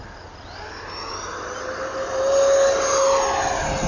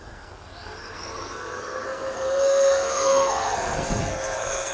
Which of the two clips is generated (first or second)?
second